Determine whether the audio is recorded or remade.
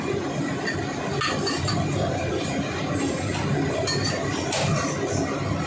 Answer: recorded